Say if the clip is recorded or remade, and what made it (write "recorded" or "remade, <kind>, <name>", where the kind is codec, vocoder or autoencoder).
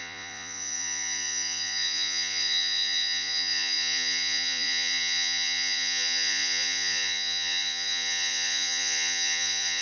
remade, vocoder, Vocos